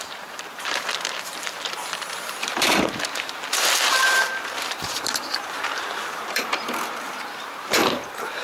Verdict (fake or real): fake